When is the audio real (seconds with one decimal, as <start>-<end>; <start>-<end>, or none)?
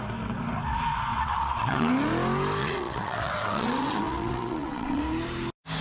0.0-1.1; 1.9-2.6; 5.0-5.8